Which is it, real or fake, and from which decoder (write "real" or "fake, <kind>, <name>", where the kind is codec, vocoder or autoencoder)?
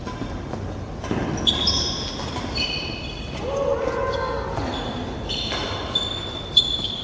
real